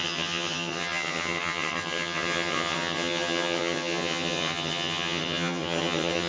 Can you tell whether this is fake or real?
fake